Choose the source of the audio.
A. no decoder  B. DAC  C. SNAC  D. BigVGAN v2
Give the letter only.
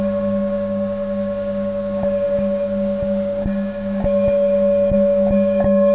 B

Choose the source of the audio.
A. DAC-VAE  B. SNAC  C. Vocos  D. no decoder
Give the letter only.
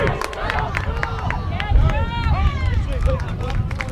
D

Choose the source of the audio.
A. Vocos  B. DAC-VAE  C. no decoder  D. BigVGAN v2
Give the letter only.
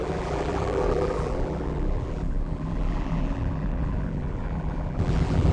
D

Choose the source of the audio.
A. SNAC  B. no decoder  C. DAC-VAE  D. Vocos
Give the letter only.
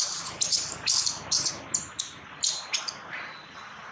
B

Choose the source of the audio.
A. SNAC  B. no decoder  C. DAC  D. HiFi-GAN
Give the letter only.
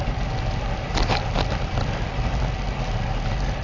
B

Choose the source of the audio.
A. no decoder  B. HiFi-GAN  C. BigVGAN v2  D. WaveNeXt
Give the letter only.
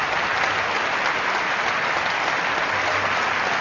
A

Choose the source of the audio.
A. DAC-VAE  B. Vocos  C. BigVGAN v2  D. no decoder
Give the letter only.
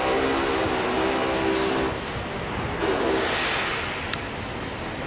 D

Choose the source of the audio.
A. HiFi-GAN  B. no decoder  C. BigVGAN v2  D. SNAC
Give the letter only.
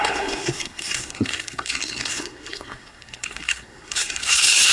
D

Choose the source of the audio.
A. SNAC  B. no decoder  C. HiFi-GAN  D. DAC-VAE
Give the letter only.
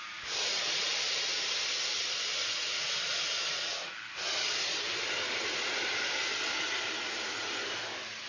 B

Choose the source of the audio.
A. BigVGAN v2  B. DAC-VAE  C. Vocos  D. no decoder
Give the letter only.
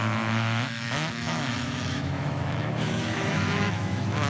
B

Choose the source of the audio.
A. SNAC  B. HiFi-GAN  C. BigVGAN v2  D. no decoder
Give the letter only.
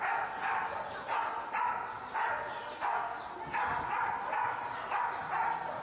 D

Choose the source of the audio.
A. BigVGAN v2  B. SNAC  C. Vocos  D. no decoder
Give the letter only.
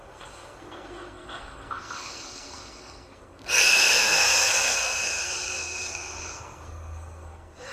B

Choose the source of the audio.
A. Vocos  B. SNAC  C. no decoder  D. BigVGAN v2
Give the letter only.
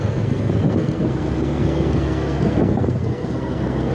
B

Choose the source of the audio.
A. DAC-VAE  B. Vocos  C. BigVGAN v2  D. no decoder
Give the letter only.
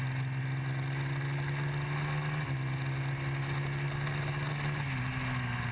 D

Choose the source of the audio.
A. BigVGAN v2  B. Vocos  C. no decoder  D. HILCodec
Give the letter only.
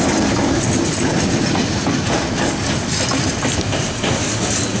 C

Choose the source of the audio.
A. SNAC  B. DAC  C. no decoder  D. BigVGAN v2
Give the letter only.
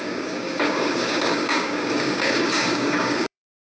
B